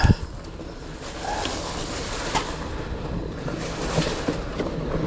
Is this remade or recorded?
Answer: recorded